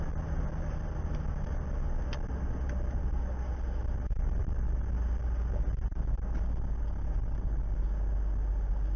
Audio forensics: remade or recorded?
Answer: recorded